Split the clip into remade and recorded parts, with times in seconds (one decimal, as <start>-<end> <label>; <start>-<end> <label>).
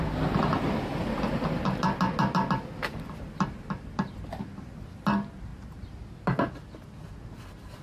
0.0-7.8 recorded